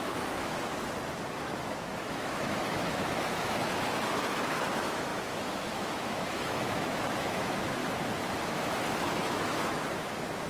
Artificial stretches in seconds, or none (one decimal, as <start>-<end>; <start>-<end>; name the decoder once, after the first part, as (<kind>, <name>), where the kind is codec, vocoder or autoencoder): 0.0-0.7 (autoencoder, DAC-VAE); 1.4-7.8; 8.5-10.5

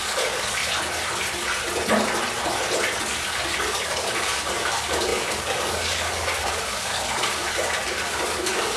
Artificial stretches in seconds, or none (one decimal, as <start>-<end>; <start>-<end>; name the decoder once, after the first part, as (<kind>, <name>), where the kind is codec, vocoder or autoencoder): 0.0-0.6 (codec, DAC); 3.0-8.8

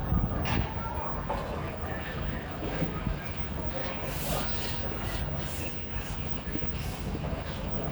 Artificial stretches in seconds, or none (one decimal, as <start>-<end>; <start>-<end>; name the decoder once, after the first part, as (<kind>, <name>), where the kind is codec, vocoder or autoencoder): 1.3-3.8 (autoencoder, DAC-VAE); 6.1-7.9

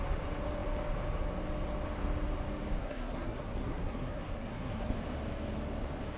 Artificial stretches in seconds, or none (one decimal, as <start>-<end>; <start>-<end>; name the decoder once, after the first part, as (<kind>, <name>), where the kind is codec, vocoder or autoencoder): 2.8-4.9 (codec, SNAC)

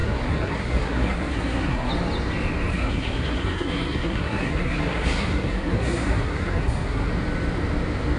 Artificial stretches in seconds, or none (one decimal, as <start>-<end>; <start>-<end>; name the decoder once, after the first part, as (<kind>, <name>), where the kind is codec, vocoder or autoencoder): 0.0-1.9 (codec, SNAC); 2.7-7.1

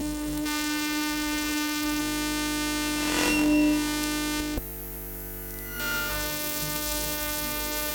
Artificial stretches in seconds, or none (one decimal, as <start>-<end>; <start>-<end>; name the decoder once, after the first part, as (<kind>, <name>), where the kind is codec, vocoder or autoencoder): 0.0-2.0 (codec, SNAC); 6.1-7.9

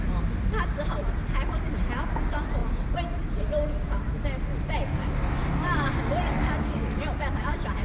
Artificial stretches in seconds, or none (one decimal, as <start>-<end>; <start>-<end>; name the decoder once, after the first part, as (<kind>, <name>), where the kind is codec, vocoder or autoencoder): none

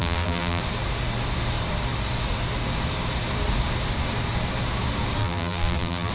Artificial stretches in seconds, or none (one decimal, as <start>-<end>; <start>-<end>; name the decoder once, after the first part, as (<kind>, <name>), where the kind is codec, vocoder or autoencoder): 0.0-0.6 (vocoder, BigVGAN v2); 5.2-6.1